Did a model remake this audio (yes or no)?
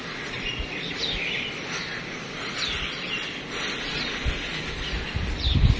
no